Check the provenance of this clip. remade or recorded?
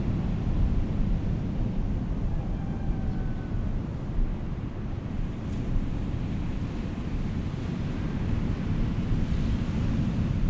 recorded